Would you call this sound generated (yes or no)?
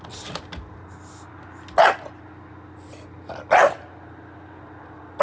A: no